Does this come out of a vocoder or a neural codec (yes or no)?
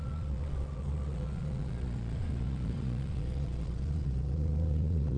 yes